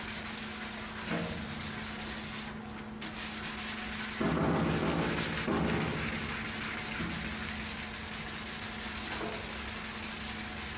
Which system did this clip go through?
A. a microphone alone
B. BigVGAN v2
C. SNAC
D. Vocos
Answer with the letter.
A